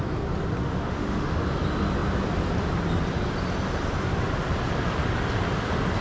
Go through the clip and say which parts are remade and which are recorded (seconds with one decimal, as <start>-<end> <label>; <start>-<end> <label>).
0.0-0.6 recorded; 0.6-1.4 remade; 1.4-6.0 recorded